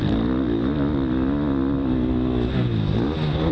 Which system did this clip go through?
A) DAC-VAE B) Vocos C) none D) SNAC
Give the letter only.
C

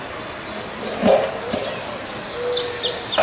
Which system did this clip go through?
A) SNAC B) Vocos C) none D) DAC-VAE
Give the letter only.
C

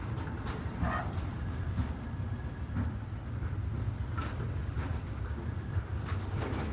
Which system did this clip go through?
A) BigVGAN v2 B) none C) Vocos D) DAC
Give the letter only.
B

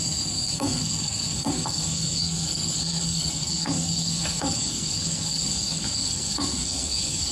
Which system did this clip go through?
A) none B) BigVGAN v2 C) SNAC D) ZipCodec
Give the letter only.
C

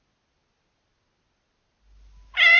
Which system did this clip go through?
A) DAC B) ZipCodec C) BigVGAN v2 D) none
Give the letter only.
D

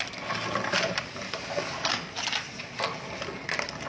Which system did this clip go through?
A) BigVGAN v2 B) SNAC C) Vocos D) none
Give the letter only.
D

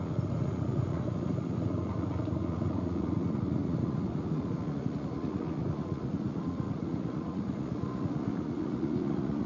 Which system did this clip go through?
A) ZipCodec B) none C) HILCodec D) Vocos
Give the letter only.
D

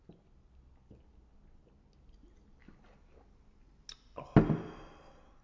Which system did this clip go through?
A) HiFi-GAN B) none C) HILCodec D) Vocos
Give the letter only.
B